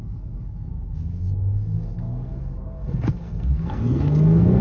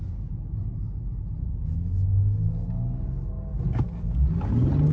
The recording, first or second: second